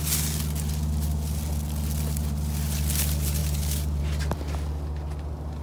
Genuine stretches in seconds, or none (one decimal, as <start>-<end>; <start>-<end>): 0.0-3.4; 4.0-5.6